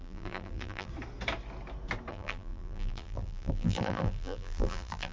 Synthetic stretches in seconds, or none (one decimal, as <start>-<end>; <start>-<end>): 0.0-0.9; 2.1-5.1